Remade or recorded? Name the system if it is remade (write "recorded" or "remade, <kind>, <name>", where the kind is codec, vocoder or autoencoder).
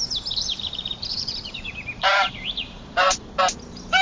remade, vocoder, BigVGAN v2